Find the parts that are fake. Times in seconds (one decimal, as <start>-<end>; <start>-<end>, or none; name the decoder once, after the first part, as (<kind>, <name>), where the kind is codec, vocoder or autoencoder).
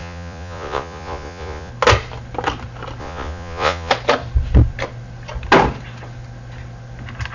0.0-1.7 (vocoder, Vocos); 3.0-3.9